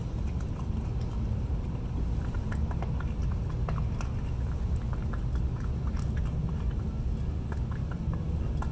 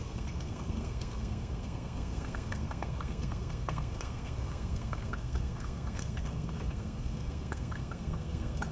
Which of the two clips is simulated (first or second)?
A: second